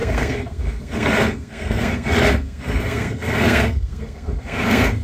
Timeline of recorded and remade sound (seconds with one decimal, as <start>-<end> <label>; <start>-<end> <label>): 0.0-5.0 remade